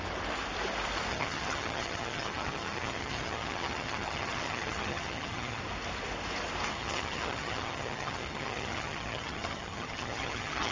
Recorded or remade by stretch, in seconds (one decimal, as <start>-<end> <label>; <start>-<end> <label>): 0.0-1.1 recorded; 1.1-5.6 remade; 5.6-6.7 recorded; 6.7-10.7 remade

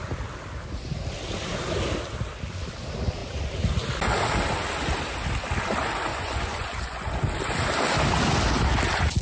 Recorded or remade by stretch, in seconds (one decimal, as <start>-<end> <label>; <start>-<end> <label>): 0.0-6.1 recorded; 6.1-7.1 remade; 7.1-9.2 recorded

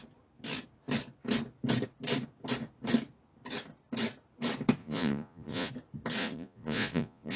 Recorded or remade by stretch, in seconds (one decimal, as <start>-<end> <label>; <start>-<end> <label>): 0.0-4.8 recorded; 4.8-5.7 remade; 5.7-6.2 recorded; 6.2-7.4 remade